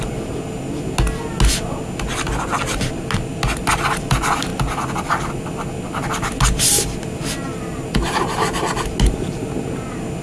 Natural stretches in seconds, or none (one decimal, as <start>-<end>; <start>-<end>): 0.0-10.2